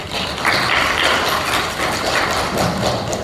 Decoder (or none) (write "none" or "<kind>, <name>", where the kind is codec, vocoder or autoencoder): none